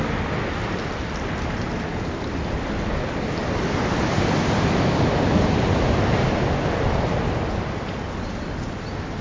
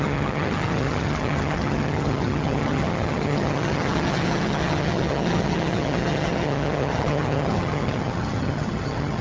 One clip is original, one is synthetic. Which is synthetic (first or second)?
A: second